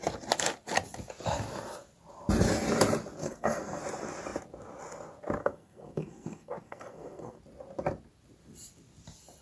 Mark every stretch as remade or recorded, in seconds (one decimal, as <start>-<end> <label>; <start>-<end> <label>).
0.0-3.2 recorded; 3.2-3.8 remade; 3.8-5.4 recorded; 5.4-7.4 remade; 7.4-9.4 recorded